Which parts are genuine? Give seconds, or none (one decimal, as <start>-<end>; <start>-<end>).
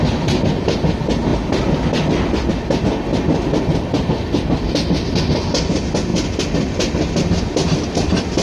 0.0-8.4